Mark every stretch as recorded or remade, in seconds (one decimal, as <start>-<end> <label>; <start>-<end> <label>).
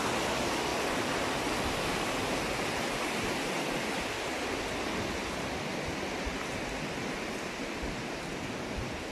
0.0-9.1 recorded